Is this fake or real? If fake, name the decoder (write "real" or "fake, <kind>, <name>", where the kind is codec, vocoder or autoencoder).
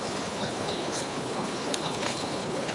fake, codec, HILCodec